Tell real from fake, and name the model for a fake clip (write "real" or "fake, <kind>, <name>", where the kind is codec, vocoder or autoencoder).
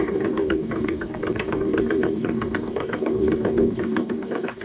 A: fake, codec, DAC